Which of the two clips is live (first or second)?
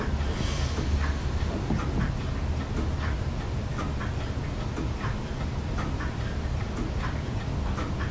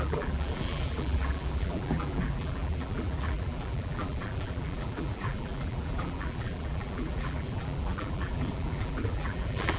first